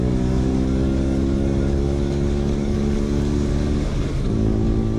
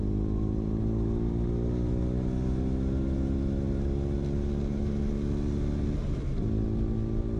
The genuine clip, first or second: second